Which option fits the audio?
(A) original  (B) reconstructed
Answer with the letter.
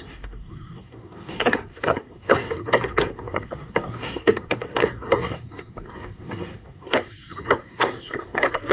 B